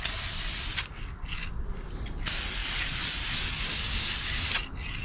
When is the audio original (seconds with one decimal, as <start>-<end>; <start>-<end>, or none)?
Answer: 0.0-5.0